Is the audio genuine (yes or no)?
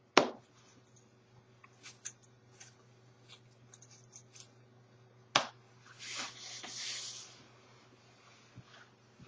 yes